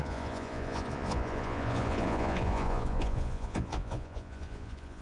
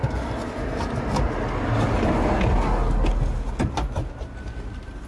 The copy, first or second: first